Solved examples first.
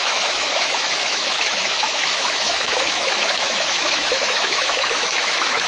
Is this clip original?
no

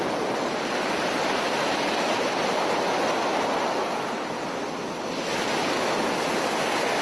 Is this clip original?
yes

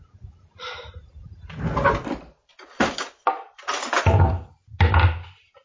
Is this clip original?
yes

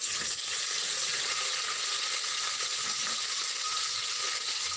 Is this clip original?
no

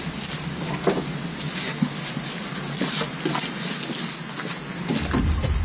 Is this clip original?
yes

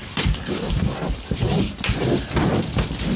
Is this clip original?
no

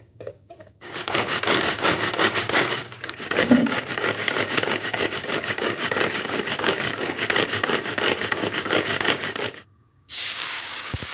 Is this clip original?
no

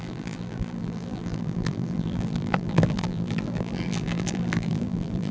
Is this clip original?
no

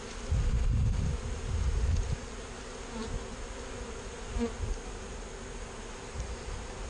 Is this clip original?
yes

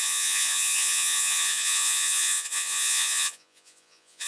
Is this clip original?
no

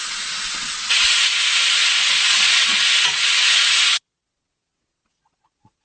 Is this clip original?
no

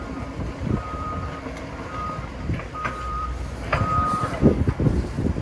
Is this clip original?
no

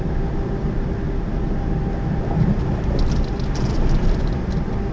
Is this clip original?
yes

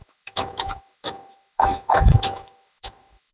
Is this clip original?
no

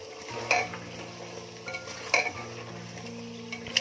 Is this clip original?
yes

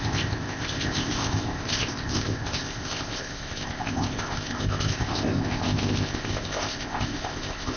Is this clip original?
no